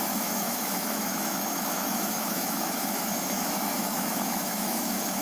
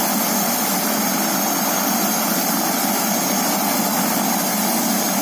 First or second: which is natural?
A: second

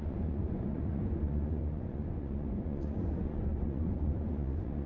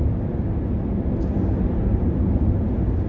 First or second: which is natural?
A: second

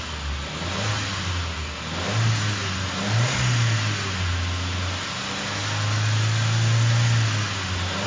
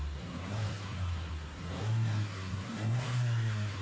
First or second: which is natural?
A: first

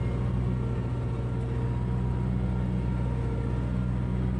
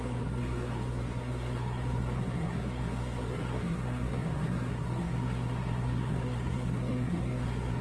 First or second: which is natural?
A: first